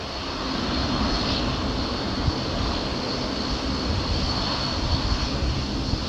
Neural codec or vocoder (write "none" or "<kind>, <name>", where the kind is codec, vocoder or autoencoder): none